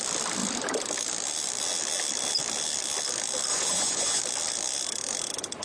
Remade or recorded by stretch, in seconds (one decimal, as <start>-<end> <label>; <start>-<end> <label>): 0.0-3.5 recorded; 3.5-4.2 remade; 4.2-5.6 recorded